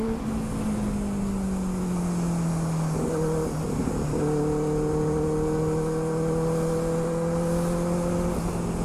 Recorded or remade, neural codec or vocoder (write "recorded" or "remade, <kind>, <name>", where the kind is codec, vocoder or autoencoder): recorded